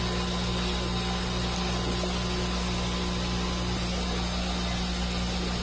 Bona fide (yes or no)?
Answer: yes